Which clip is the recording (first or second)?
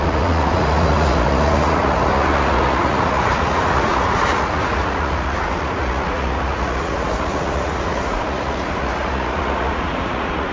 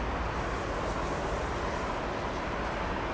second